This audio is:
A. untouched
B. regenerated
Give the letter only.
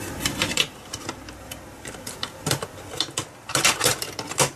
A